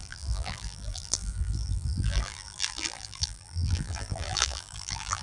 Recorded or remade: remade